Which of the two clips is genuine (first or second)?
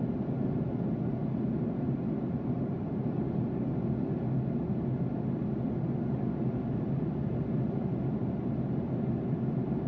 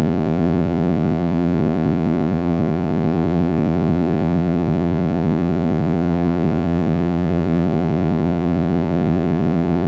first